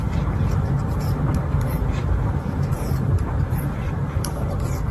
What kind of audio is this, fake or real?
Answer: fake